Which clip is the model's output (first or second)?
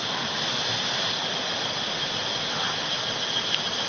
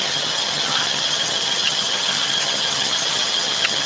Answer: second